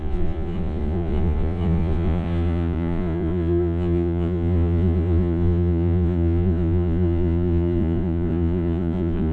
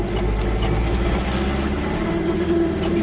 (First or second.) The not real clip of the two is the first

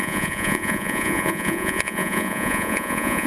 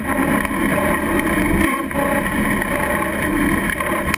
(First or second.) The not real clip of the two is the first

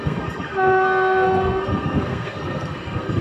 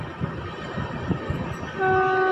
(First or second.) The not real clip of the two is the first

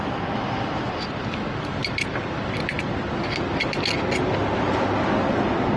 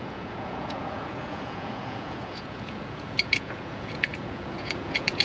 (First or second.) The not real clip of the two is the second